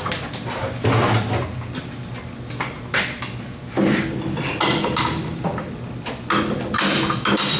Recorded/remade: recorded